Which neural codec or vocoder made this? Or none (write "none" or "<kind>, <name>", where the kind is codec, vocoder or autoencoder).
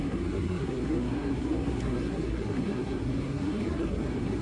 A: codec, SNAC